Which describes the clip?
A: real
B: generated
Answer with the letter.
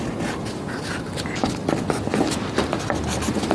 A